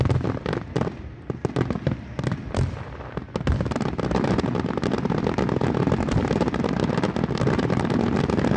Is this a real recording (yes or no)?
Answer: yes